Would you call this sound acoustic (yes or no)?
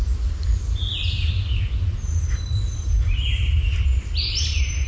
yes